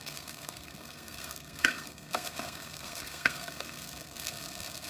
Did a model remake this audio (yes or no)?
yes